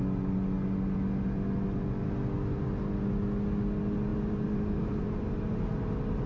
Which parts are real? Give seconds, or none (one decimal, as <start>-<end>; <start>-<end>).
0.0-4.1